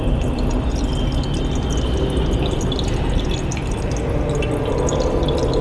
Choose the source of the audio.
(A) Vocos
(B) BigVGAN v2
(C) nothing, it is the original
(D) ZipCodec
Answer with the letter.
C